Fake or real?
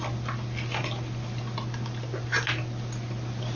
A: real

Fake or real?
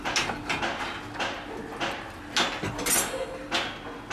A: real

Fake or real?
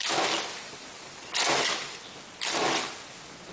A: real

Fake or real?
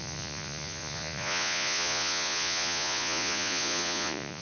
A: fake